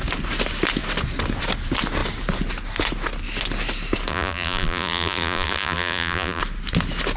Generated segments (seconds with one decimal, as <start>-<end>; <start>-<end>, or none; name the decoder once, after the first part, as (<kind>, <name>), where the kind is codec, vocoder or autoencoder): 4.1-6.4 (vocoder, BigVGAN v2)